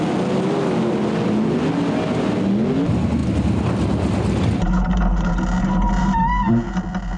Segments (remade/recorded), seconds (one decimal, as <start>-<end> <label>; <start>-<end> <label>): 0.0-7.2 recorded